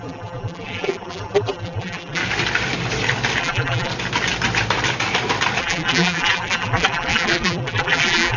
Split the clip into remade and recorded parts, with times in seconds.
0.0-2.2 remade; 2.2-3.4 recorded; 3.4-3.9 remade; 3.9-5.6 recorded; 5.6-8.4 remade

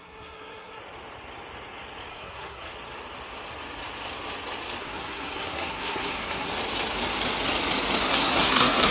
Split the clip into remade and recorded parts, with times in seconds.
0.0-0.8 remade; 0.8-2.1 recorded; 2.1-2.7 remade; 2.7-4.8 recorded; 4.8-6.5 remade; 6.5-8.1 recorded; 8.1-8.9 remade

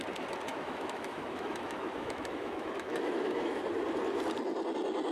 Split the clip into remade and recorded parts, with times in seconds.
0.0-0.5 recorded; 0.5-3.6 remade; 3.6-5.1 recorded

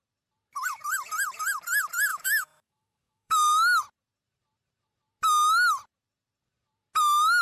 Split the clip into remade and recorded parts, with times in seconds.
0.0-2.1 recorded; 2.1-3.8 remade; 3.8-7.4 recorded

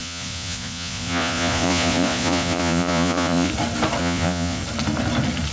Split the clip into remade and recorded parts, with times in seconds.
0.0-3.5 remade; 3.5-4.0 recorded; 4.0-4.6 remade; 4.6-5.5 recorded

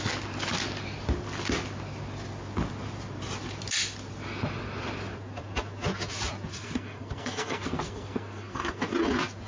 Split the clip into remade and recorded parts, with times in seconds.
0.0-6.5 recorded; 6.5-8.9 remade; 8.9-9.5 recorded

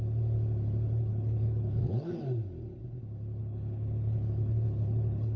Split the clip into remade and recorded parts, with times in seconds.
0.0-1.1 recorded; 1.1-2.2 remade; 2.2-3.4 recorded; 3.4-5.4 remade

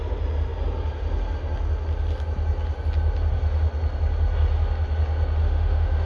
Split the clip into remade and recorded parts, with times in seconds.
0.0-5.4 recorded; 5.4-6.1 remade